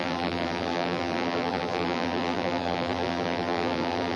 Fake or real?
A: fake